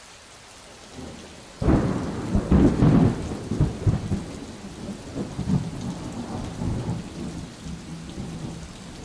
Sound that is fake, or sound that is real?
real